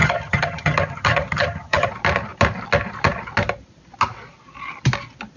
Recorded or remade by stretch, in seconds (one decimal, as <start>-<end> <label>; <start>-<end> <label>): 0.0-1.9 remade; 1.9-5.4 recorded